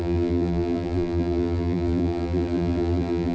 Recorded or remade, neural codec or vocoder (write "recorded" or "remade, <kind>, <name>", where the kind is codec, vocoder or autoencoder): remade, vocoder, BigVGAN v2